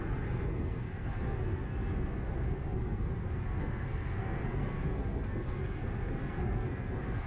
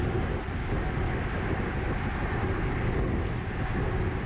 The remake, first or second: first